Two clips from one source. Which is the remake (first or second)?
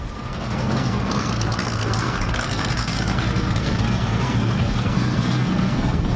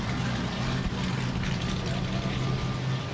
first